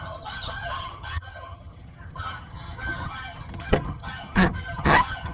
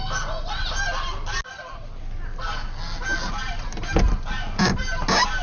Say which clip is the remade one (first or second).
first